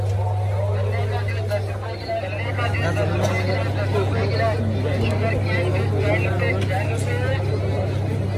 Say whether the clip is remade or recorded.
recorded